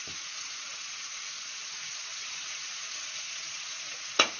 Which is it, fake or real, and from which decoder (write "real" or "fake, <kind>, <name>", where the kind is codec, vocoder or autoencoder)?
fake, vocoder, Vocos